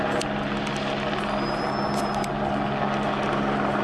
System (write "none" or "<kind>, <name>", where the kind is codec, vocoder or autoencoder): none